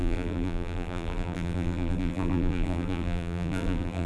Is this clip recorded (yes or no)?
no